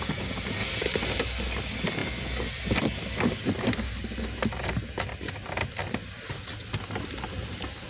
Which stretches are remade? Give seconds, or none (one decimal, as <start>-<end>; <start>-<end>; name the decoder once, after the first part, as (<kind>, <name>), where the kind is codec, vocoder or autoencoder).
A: 0.6-1.2 (vocoder, BigVGAN v2)

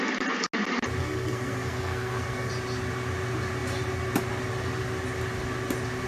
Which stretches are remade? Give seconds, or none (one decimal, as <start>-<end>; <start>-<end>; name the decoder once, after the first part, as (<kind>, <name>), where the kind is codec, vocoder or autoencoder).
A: 1.0-2.5 (codec, SNAC)

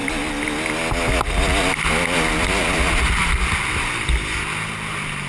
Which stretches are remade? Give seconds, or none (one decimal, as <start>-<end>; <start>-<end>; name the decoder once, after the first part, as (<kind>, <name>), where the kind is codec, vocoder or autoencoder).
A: none

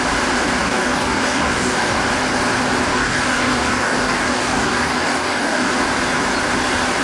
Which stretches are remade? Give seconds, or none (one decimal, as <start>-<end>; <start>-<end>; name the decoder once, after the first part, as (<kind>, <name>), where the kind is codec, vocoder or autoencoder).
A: 0.6-2.0 (codec, DAC); 2.9-5.7

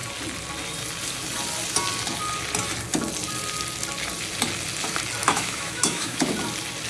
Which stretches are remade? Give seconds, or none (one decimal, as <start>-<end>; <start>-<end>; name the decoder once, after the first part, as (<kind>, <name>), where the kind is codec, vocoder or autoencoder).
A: 5.2-6.3 (autoencoder, DAC-VAE)